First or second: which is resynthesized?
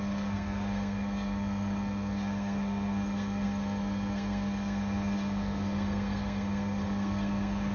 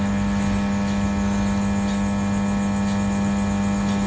first